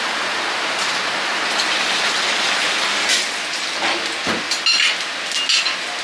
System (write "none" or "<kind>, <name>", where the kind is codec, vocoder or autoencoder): none